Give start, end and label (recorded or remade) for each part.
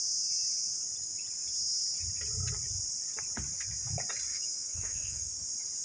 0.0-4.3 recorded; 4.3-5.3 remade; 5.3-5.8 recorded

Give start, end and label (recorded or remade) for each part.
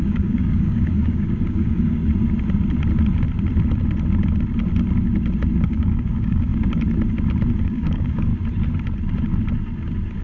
0.0-2.0 remade; 2.0-5.6 recorded; 5.6-6.5 remade; 6.5-7.6 recorded; 7.6-8.3 remade; 8.3-10.2 recorded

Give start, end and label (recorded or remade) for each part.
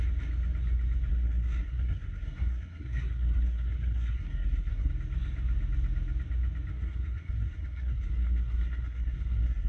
0.0-1.1 recorded; 1.1-4.9 remade; 4.9-6.7 recorded; 6.7-9.7 remade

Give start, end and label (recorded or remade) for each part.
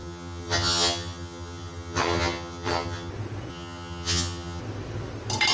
0.0-3.1 remade; 3.1-3.5 recorded; 3.5-4.6 remade; 4.6-5.5 recorded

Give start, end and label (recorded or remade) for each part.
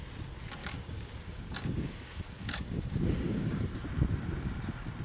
0.0-0.6 recorded; 0.6-3.6 remade; 3.6-5.0 recorded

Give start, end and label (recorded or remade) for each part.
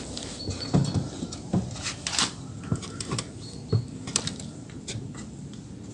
0.0-0.8 recorded; 0.8-3.2 remade; 3.2-5.9 recorded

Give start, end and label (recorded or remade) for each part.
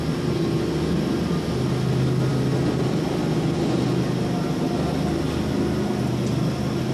0.0-6.9 recorded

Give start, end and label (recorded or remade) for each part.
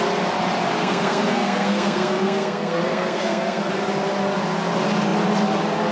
0.0-0.8 recorded; 0.8-3.7 remade; 3.7-5.9 recorded